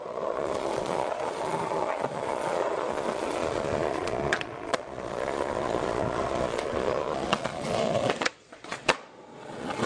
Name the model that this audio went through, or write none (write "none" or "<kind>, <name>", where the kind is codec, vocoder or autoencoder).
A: vocoder, Vocos